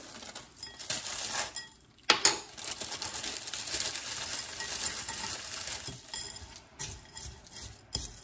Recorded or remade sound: recorded